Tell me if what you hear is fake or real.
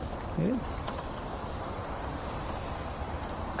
fake